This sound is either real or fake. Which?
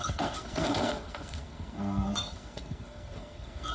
fake